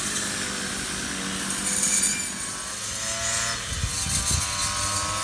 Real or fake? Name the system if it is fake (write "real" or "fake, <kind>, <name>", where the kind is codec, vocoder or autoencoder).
real